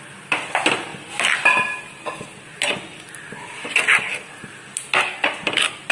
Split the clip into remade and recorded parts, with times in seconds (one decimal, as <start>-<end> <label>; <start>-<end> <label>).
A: 0.0-5.9 recorded